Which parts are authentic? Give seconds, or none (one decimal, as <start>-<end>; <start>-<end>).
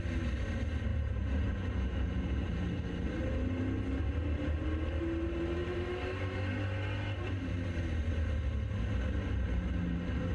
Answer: 0.0-0.9; 2.6-10.3